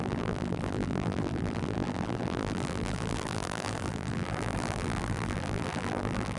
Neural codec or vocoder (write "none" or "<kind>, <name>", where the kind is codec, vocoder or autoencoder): vocoder, BigVGAN v2